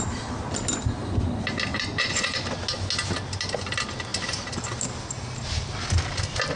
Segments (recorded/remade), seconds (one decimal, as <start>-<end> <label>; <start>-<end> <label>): 0.0-1.7 recorded; 1.7-2.4 remade; 2.4-6.6 recorded